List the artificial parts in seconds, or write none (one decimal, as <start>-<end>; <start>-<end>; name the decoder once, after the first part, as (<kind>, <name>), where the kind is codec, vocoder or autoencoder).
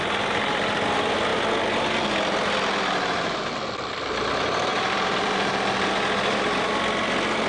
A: 4.7-5.5 (vocoder, BigVGAN v2)